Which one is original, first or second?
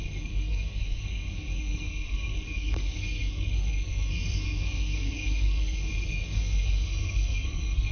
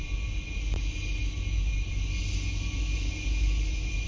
second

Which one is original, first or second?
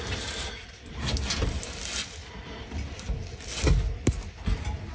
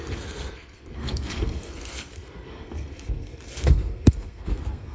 first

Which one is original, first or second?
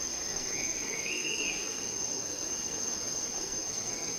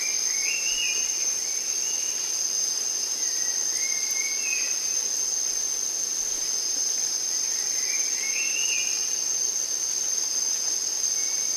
second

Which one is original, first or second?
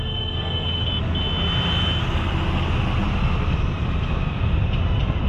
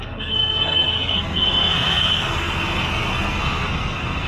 first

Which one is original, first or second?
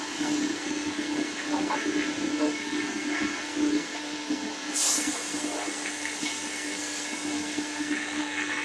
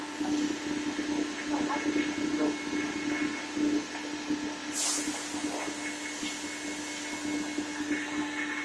second